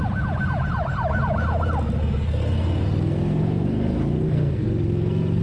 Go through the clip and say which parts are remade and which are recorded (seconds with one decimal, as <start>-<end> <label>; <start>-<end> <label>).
0.0-2.0 recorded; 2.0-5.4 remade